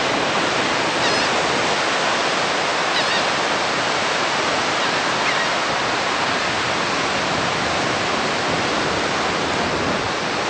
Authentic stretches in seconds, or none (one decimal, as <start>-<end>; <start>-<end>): 0.0-10.5